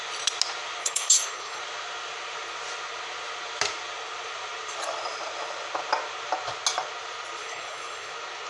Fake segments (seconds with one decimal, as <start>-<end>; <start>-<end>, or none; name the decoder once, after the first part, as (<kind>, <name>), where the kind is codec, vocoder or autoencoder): 0.8-1.6 (codec, HILCodec); 7.4-8.1